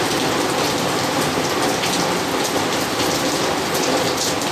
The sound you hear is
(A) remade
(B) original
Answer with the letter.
B